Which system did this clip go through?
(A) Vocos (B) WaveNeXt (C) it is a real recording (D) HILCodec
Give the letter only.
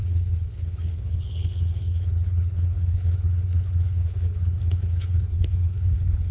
D